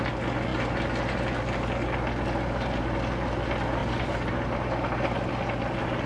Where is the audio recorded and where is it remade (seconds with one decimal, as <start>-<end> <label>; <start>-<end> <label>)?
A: 0.0-6.1 recorded